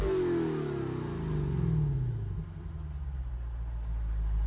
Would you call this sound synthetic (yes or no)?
no